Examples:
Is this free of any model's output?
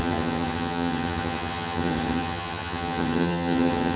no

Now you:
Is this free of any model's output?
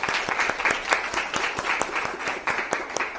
yes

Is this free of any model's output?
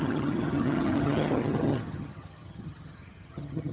no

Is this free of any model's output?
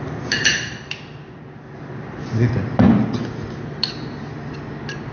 yes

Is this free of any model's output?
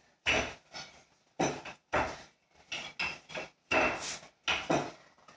yes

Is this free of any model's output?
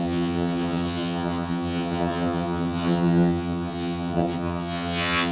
no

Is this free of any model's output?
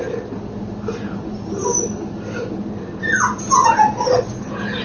yes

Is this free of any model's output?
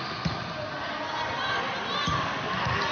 yes